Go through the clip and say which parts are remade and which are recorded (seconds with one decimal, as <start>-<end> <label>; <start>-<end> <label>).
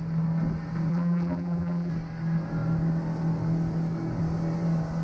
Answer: 0.0-0.9 recorded; 0.9-1.9 remade; 1.9-5.0 recorded